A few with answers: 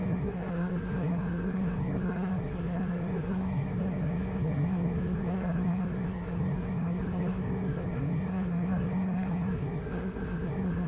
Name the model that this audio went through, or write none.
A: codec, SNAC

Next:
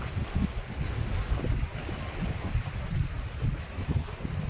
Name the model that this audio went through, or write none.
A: none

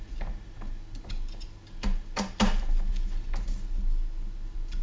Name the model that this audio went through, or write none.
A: none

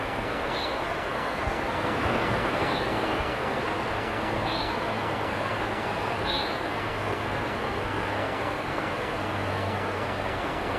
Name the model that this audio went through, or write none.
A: codec, SNAC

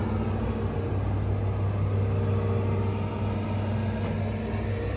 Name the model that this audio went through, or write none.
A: none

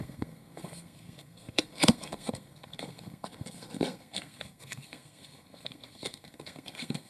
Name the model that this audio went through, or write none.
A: codec, SNAC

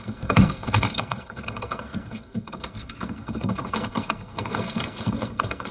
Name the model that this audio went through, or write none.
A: codec, SNAC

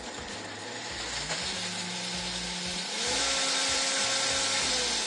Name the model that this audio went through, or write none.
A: none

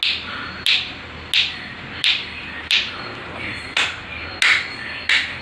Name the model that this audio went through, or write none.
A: none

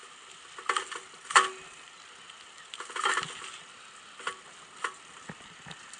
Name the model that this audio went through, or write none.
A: none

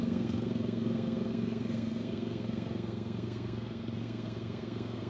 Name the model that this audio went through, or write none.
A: codec, SNAC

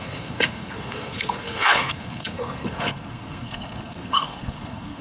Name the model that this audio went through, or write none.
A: codec, SNAC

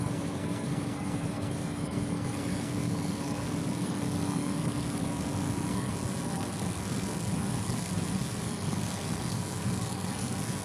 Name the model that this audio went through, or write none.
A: codec, SNAC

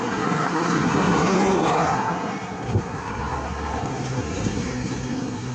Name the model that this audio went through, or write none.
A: codec, SNAC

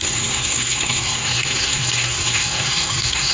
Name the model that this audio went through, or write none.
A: codec, SNAC